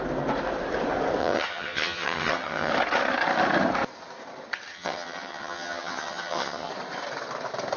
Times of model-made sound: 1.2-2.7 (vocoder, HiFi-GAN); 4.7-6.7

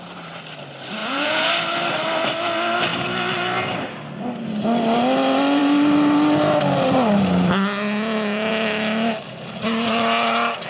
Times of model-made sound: 1.0-1.5 (vocoder, Vocos)

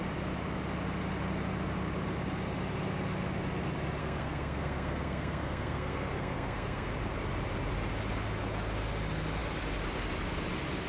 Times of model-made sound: 4.0-6.9 (codec, SNAC)

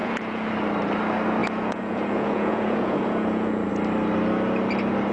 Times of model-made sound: 0.0-0.5 (vocoder, Vocos); 1.4-3.7

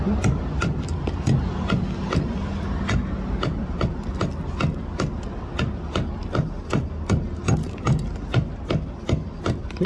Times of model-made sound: none

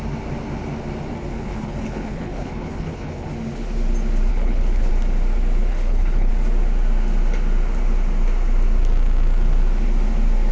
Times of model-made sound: 1.3-3.3 (codec, HILCodec); 4.3-4.9; 5.7-6.3

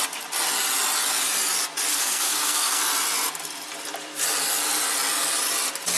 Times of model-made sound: 1.9-2.8 (codec, SNAC)